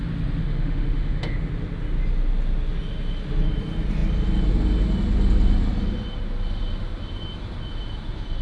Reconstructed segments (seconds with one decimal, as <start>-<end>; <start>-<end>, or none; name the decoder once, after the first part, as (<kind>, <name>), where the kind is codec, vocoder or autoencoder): 0.4-1.5 (autoencoder, DAC-VAE)